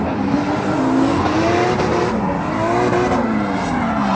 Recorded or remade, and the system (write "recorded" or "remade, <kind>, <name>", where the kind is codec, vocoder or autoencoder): recorded